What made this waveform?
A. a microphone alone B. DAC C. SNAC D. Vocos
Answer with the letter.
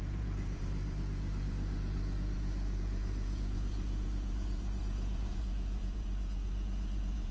D